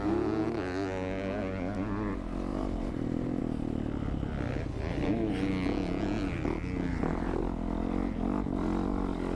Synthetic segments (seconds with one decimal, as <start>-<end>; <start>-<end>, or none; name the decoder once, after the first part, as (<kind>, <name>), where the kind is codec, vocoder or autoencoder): 2.5-3.4 (vocoder, BigVGAN v2); 6.9-7.4